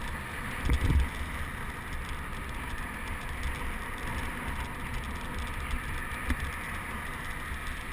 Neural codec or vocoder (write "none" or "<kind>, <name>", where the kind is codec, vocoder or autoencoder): none